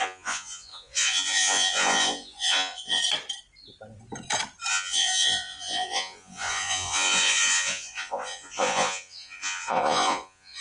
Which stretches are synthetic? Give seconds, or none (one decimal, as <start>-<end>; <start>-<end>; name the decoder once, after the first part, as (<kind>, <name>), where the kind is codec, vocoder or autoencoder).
0.0-3.0 (vocoder, Vocos); 4.7-10.6

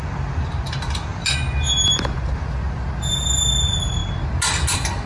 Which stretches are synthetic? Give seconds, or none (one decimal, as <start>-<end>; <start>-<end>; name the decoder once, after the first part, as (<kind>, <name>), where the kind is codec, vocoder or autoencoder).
none

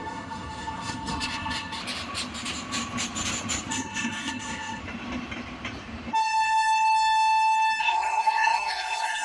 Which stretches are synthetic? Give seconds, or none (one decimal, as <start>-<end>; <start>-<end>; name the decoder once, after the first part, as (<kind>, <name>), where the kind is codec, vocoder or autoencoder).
0.0-1.8 (codec, SNAC); 3.7-4.8; 7.8-9.2

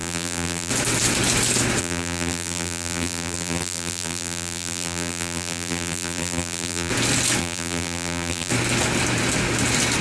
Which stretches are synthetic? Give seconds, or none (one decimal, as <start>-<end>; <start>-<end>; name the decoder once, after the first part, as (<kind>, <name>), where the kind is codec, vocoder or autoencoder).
0.0-0.7 (vocoder, BigVGAN v2); 1.8-6.9; 7.4-8.5